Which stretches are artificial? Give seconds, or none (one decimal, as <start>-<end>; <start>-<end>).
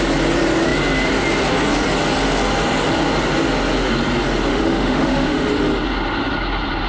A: 4.5-5.5